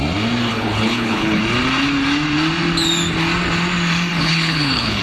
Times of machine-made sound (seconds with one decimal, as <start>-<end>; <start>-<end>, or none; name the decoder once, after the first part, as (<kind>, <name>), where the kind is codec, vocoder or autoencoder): 0.5-1.4 (codec, HILCodec); 4.1-5.0